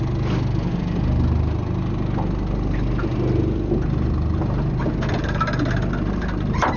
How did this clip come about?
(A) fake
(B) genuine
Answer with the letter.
B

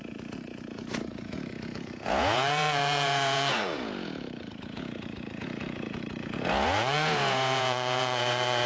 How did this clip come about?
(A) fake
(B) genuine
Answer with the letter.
A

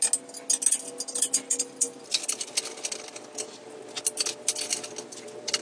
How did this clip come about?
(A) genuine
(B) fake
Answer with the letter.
A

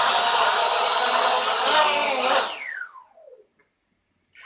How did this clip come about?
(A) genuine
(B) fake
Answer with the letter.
A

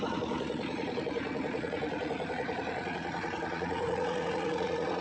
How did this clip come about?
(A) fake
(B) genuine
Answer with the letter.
A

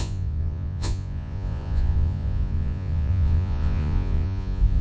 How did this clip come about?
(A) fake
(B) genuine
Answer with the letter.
A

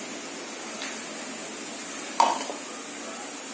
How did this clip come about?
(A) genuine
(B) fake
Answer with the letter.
A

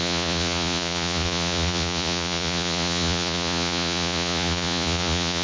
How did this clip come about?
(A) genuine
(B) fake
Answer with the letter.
B